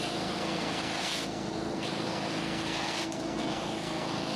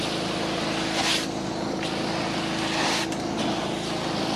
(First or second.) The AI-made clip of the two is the first